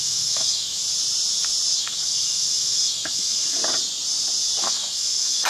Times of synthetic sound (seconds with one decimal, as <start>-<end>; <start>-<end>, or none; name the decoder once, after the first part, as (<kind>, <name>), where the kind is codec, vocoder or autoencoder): 0.0-0.8 (autoencoder, DAC-VAE); 1.8-3.6; 4.6-5.5